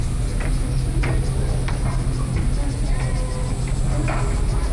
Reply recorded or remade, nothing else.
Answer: recorded